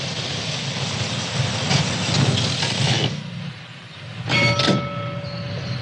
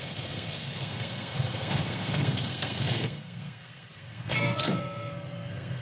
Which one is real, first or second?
first